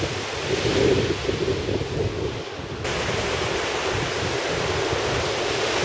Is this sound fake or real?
real